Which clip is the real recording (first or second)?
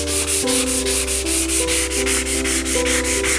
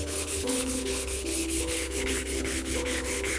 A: first